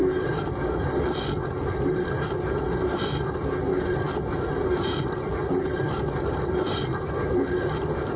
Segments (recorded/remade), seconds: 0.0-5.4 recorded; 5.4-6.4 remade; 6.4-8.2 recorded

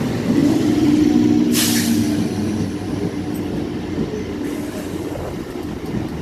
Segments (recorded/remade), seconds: 0.0-0.4 recorded; 0.4-1.0 remade; 1.0-6.2 recorded